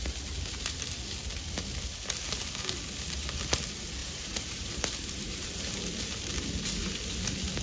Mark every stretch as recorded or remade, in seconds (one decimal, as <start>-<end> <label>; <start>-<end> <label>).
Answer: 0.0-4.0 recorded; 4.0-5.5 remade; 5.5-7.6 recorded